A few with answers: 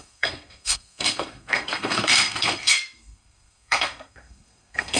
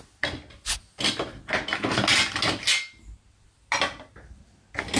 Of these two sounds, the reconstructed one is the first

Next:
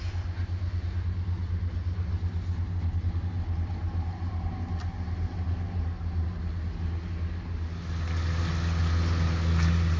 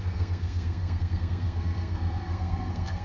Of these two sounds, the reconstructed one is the second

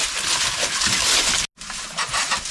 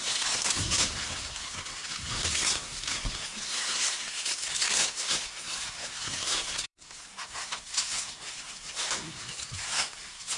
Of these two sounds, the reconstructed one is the second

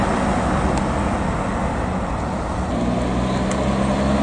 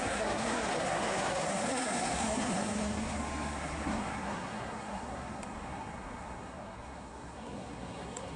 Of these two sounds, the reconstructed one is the second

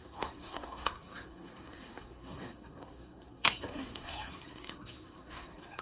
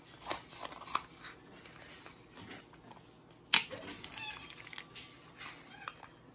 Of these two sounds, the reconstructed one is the first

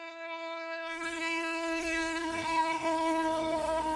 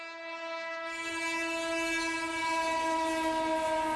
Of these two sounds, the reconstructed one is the first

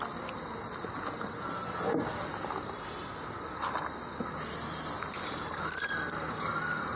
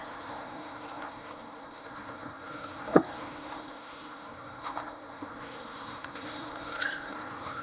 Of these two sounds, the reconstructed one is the second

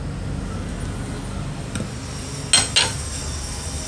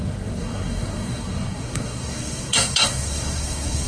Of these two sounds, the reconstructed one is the second